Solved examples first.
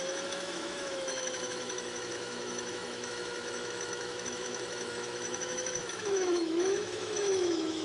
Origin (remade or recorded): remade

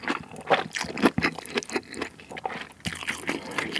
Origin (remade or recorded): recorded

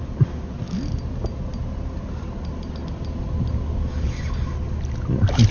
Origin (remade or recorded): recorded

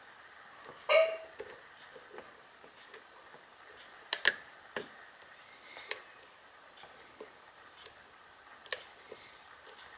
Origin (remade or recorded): recorded